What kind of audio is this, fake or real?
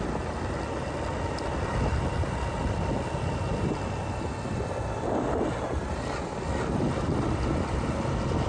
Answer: real